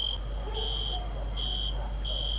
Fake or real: real